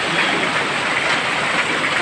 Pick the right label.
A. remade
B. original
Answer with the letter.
B